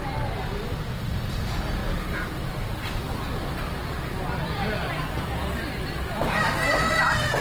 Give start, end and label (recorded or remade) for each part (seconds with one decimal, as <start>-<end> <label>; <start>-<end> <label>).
0.0-1.8 remade; 1.8-2.4 recorded; 2.4-7.4 remade